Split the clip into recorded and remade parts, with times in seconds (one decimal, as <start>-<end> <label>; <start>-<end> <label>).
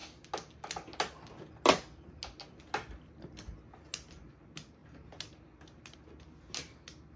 0.0-7.2 recorded